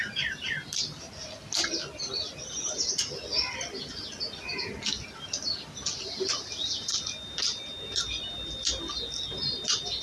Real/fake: real